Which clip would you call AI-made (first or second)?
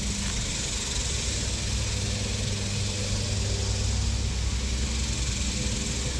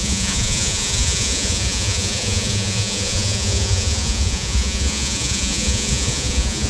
second